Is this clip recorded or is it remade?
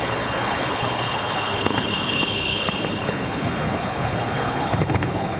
remade